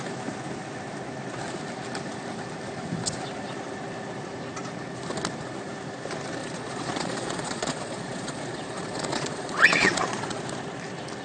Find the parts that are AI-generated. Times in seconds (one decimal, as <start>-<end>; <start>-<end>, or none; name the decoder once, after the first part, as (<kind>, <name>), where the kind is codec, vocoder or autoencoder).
6.4-10.4 (vocoder, Vocos)